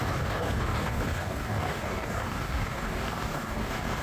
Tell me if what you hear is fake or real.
fake